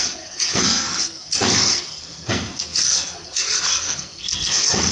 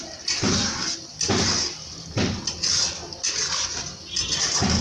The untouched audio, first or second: second